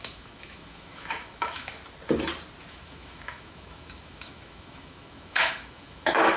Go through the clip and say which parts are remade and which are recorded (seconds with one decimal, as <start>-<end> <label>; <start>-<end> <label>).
0.0-1.8 remade; 1.8-2.7 recorded; 2.7-6.4 remade